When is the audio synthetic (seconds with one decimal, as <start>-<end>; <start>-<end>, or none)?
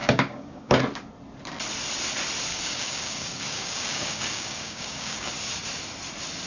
0.0-0.8; 2.5-5.3